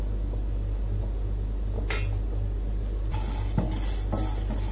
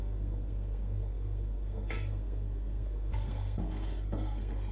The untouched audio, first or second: first